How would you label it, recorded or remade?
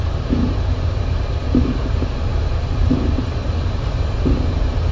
remade